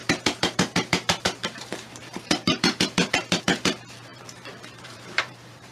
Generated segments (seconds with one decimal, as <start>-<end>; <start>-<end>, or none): 0.0-5.7